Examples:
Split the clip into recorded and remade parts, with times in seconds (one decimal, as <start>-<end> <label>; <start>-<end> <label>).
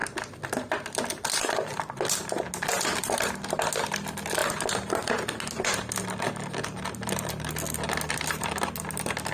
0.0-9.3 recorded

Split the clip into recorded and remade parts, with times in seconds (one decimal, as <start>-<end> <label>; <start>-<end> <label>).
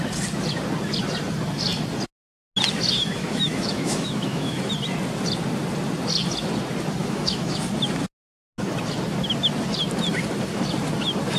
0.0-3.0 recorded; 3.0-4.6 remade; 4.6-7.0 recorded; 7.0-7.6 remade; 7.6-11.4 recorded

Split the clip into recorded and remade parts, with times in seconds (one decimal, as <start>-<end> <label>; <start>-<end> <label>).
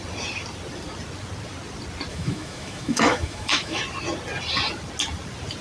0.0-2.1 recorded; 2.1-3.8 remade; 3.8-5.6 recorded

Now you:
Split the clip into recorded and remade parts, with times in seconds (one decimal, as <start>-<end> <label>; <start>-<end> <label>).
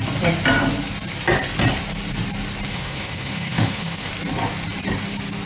0.0-2.7 recorded; 2.7-4.1 remade; 4.1-5.5 recorded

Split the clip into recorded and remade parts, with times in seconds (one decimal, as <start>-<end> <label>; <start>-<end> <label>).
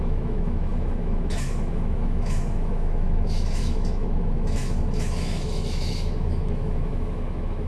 0.0-7.7 remade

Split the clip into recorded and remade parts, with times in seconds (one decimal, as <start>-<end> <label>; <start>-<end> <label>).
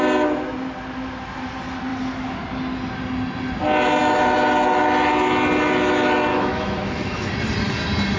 0.0-6.3 recorded; 6.3-7.3 remade; 7.3-8.2 recorded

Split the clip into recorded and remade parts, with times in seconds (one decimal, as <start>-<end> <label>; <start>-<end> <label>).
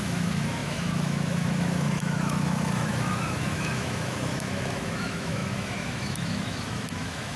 0.0-7.4 remade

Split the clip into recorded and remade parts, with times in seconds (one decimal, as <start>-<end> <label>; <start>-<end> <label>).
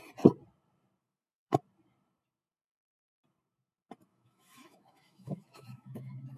0.0-1.0 recorded; 1.0-1.6 remade; 1.6-4.1 recorded; 4.1-6.4 remade